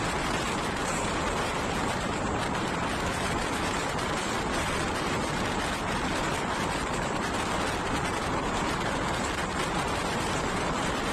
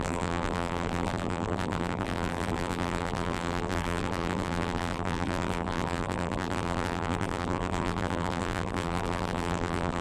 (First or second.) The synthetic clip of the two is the second